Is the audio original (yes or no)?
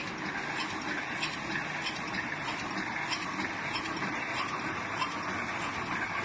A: yes